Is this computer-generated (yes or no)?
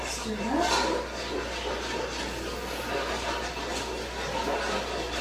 no